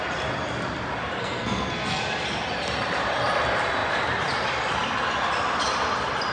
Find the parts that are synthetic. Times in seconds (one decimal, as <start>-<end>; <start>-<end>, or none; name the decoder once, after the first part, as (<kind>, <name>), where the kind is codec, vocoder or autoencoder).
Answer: 1.2-2.0 (codec, SNAC)